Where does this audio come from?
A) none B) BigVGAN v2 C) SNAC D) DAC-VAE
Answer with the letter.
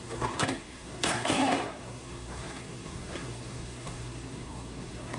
C